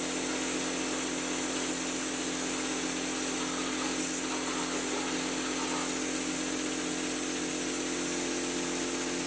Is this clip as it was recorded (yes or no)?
yes